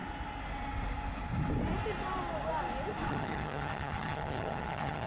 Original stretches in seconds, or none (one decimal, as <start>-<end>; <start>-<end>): 0.0-3.1